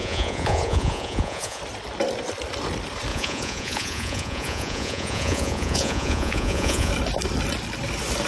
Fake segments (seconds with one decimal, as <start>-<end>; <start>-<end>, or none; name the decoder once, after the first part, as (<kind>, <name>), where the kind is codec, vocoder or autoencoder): 0.0-1.6 (vocoder, Vocos); 3.1-6.9